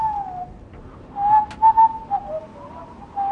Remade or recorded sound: recorded